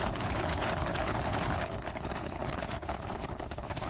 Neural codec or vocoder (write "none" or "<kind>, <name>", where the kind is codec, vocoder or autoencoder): codec, HILCodec